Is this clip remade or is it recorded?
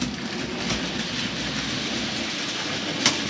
recorded